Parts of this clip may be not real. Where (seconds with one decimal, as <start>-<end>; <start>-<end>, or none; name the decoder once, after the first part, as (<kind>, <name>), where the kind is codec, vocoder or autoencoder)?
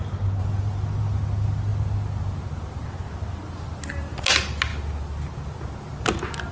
none